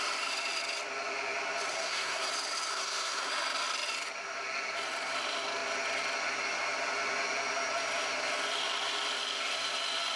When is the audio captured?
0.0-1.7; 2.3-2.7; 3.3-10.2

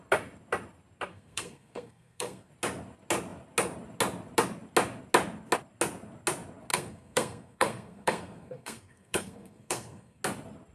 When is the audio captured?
0.0-1.1; 2.5-6.7; 10.2-10.7

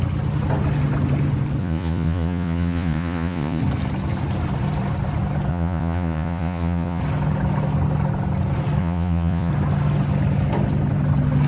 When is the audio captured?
0.0-1.6; 3.6-5.5; 7.0-8.8; 9.5-11.5

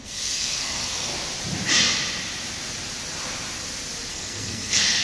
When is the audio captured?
1.1-4.1

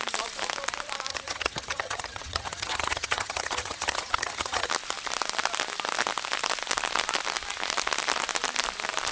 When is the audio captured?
0.0-1.1; 4.7-9.1

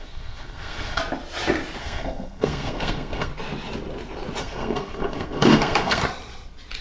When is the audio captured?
1.0-1.8; 3.3-4.4; 6.0-6.8